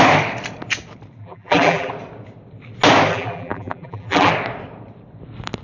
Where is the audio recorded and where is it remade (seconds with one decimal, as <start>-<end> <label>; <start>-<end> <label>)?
0.0-1.2 recorded; 1.2-1.9 remade; 1.9-3.1 recorded; 3.1-4.3 remade; 4.3-5.6 recorded